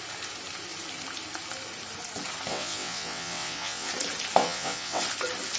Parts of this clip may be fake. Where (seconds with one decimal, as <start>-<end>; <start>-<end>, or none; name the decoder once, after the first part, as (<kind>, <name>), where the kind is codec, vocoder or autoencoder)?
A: 2.5-3.9 (vocoder, WaveNeXt); 4.4-5.0